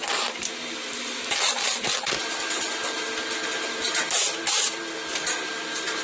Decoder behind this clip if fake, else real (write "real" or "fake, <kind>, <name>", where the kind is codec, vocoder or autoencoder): real